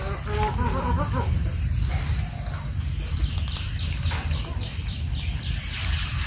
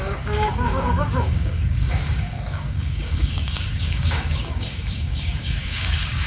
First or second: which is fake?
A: second